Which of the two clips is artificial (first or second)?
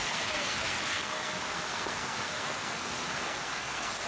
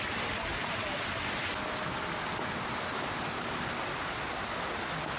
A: first